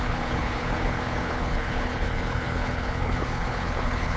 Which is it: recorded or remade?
remade